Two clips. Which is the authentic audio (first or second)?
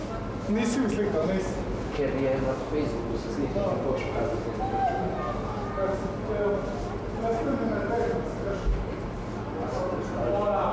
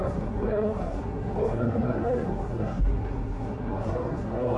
first